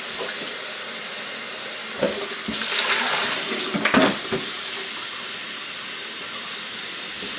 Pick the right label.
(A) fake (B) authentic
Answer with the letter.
B